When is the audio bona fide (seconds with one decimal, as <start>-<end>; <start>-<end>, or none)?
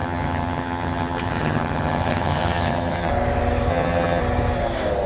3.1-3.7; 4.2-5.1